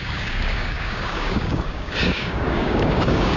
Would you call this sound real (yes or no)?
no